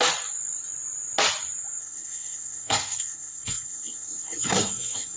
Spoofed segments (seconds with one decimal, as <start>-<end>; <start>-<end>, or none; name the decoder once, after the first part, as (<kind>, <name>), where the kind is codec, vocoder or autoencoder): 1.8-5.2 (codec, SNAC)